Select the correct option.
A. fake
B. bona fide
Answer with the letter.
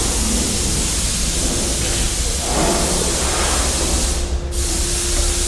B